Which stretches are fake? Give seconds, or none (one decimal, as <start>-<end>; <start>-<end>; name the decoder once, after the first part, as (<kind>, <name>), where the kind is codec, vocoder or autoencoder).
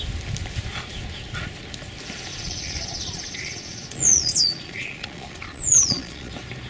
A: 2.3-6.3 (vocoder, Vocos)